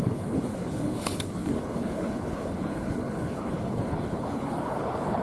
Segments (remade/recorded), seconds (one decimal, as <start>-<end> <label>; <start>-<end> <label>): 0.0-5.2 remade